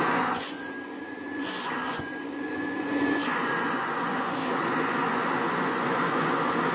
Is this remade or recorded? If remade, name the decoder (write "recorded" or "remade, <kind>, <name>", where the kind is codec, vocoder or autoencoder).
remade, vocoder, Vocos